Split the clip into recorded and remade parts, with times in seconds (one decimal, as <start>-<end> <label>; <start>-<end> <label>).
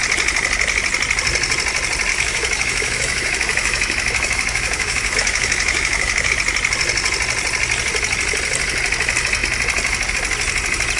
0.0-2.1 recorded; 2.1-6.3 remade; 6.3-11.0 recorded